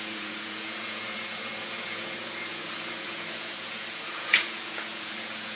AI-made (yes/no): yes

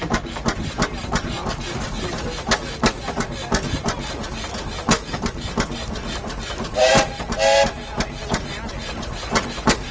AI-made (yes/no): no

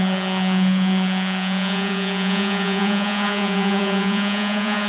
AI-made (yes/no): yes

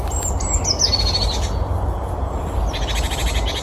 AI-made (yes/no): no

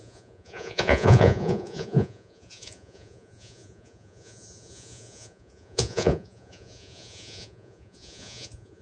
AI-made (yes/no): yes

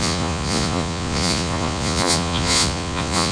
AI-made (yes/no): yes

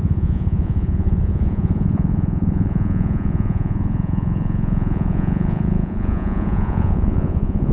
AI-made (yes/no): yes